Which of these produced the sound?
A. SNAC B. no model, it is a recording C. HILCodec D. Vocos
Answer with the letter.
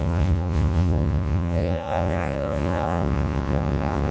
D